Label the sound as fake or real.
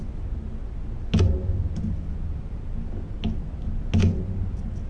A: real